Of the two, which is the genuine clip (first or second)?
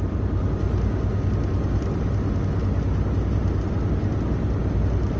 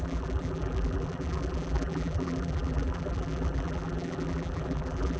first